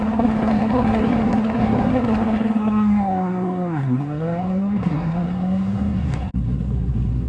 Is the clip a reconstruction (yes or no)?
yes